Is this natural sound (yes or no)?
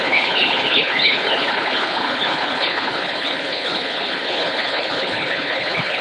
no